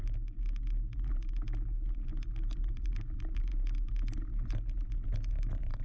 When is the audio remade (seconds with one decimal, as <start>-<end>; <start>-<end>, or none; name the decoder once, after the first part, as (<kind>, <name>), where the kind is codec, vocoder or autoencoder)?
2.6-3.5 (vocoder, BigVGAN v2); 5.3-5.8